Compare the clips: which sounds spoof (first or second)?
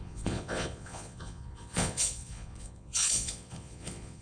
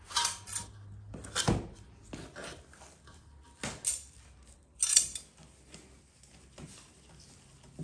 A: first